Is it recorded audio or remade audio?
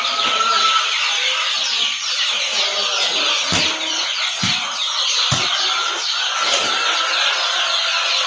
recorded